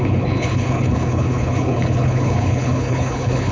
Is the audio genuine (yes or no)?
no